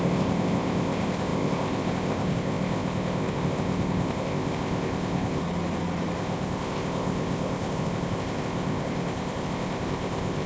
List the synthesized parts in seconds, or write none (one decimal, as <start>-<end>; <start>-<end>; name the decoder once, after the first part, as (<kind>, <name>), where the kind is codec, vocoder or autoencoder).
0.0-5.4 (codec, ZipCodec); 6.2-10.5